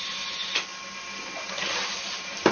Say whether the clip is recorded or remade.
recorded